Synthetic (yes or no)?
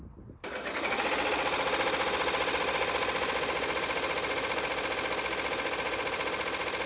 no